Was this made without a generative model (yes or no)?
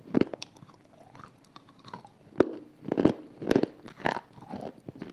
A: yes